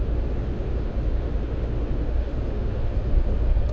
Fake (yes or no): yes